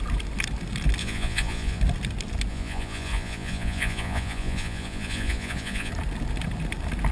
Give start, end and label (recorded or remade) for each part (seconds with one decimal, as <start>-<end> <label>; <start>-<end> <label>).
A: 0.0-1.0 recorded; 1.0-1.8 remade; 1.8-2.5 recorded; 2.5-5.9 remade; 5.9-7.1 recorded